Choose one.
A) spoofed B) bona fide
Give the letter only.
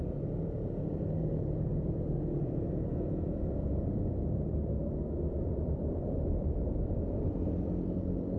A